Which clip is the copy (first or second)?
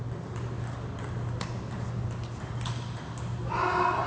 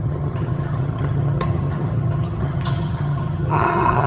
second